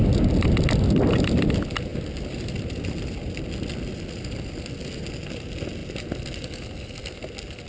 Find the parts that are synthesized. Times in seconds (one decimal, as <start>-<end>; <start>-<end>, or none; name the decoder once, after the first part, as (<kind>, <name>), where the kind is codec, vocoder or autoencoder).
none